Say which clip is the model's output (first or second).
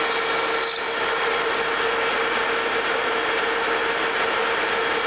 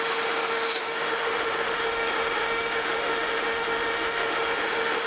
second